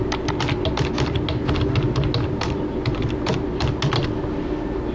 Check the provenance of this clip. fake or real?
real